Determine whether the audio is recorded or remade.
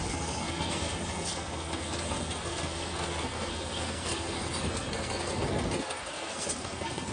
remade